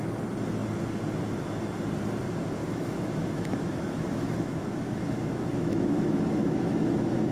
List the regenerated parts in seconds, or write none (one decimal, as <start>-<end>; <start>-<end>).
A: 2.6-7.3